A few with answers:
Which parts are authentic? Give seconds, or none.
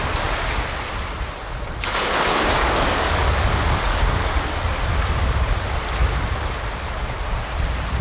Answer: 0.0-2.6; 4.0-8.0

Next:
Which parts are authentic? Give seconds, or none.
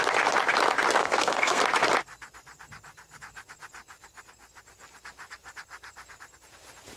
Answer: 0.0-1.0; 1.6-7.0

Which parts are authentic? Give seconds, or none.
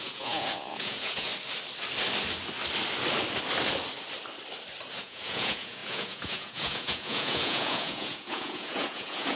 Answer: 1.3-5.0